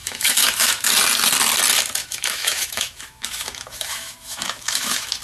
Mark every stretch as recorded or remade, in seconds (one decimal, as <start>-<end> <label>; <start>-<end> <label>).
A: 0.0-0.9 remade; 0.9-2.0 recorded; 2.0-5.2 remade